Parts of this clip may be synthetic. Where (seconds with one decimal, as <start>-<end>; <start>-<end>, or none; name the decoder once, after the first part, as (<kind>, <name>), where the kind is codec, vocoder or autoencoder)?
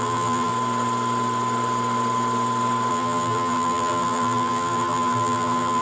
0.0-0.5 (vocoder, BigVGAN v2); 2.9-5.8